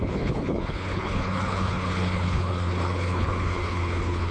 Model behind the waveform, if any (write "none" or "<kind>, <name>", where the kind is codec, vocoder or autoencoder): codec, HILCodec